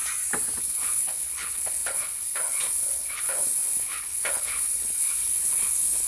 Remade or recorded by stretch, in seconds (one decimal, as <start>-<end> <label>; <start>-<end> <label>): 0.0-0.6 recorded; 0.6-6.1 remade